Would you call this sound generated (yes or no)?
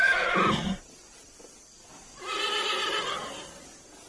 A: no